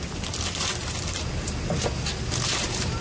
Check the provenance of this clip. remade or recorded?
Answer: recorded